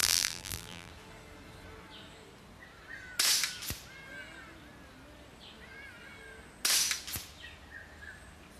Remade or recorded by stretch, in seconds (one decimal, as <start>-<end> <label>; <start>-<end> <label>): 0.0-0.9 remade; 0.9-8.6 recorded

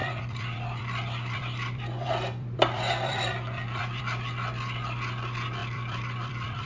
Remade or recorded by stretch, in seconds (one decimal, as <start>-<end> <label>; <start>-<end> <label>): 0.0-4.0 remade; 4.0-5.6 recorded; 5.6-6.7 remade

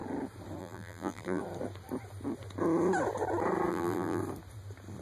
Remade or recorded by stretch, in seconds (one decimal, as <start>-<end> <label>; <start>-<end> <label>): 0.0-0.6 recorded; 0.6-1.4 remade; 1.4-3.7 recorded; 3.7-4.2 remade; 4.2-5.0 recorded

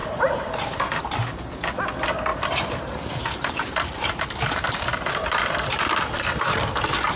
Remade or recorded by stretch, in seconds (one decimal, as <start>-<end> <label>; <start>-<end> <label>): 0.0-1.0 remade; 1.0-2.3 recorded; 2.3-6.6 remade; 6.6-7.2 recorded